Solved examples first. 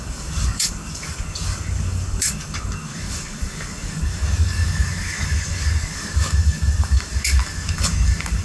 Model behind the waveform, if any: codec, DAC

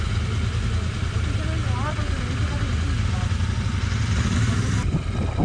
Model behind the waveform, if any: none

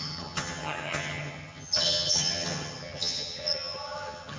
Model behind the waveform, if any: vocoder, HiFi-GAN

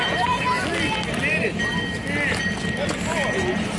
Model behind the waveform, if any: none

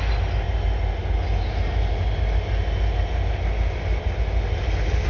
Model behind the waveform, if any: none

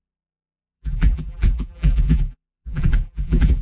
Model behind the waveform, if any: vocoder, BigVGAN v2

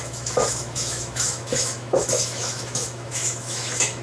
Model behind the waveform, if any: autoencoder, DAC-VAE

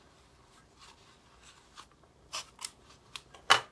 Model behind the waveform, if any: none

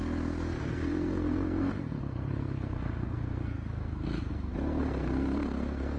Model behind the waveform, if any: codec, SNAC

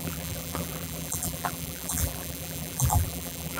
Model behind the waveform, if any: vocoder, BigVGAN v2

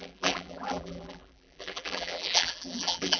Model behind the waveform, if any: vocoder, BigVGAN v2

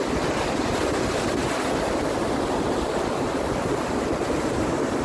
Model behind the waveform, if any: none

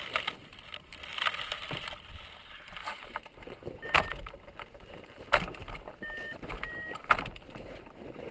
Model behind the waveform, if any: none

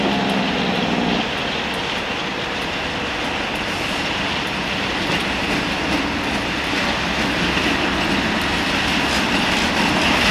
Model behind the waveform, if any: none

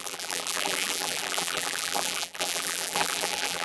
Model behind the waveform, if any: vocoder, BigVGAN v2